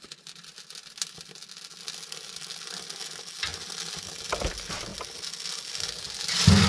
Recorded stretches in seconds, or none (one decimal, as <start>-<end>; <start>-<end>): 0.0-6.7